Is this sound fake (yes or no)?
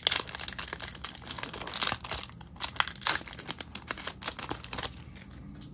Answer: no